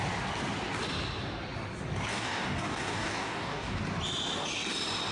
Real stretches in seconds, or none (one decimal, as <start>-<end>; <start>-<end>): 0.0-2.1; 3.8-5.1